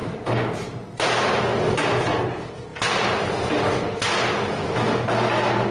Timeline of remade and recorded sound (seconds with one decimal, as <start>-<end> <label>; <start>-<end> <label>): 0.0-1.4 remade; 1.4-5.7 recorded